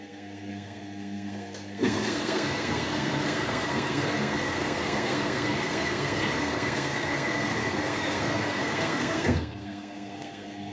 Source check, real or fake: fake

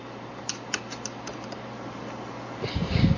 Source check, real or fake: real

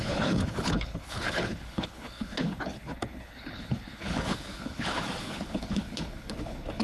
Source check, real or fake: fake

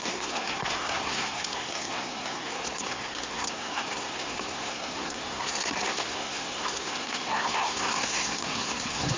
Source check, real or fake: fake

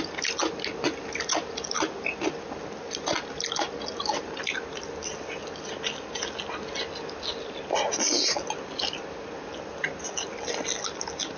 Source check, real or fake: real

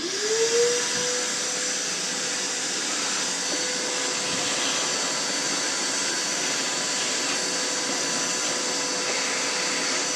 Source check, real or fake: real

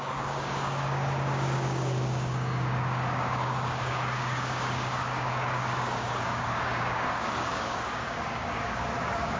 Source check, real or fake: fake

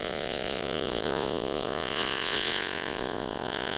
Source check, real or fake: fake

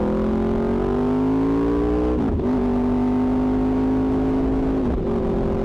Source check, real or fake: real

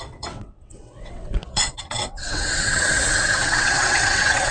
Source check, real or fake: fake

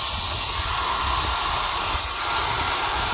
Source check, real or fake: real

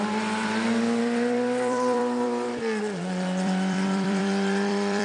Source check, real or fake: fake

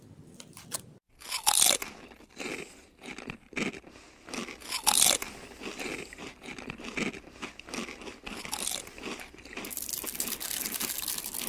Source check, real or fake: real